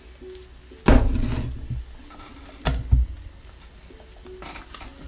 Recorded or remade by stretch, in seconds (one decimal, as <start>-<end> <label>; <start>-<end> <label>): 0.0-5.1 recorded